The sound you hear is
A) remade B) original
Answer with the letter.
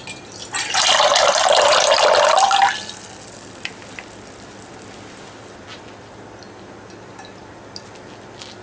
B